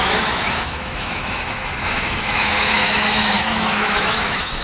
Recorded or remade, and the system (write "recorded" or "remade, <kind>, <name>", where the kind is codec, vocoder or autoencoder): remade, autoencoder, DAC-VAE